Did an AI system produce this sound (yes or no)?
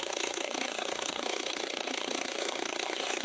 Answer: yes